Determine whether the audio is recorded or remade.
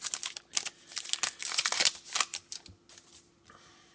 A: recorded